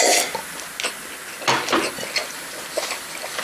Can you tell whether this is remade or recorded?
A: recorded